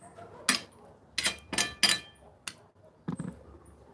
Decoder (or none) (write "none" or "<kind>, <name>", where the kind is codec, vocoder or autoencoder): none